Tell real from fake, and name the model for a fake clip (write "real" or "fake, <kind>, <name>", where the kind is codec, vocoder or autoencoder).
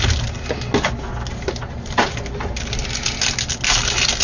real